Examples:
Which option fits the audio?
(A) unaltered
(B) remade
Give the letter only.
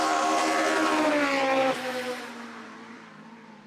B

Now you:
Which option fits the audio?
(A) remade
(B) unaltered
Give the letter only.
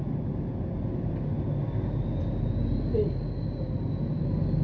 B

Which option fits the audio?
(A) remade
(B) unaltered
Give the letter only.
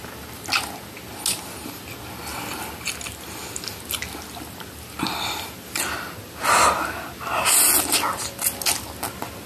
B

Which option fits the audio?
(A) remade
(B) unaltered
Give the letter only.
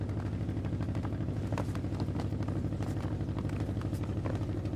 B